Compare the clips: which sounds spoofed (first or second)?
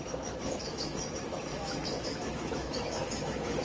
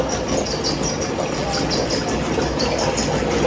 first